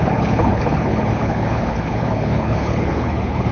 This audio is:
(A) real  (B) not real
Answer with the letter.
B